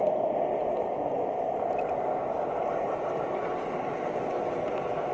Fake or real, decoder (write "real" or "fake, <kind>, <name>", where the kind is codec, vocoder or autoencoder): real